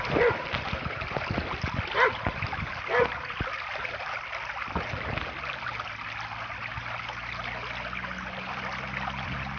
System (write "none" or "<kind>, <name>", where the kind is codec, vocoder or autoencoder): none